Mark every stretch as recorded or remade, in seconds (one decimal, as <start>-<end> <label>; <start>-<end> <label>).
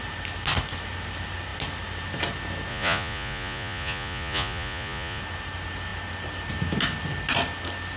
0.0-2.7 recorded; 2.7-5.2 remade; 5.2-8.0 recorded